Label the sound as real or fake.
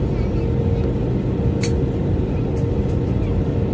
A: real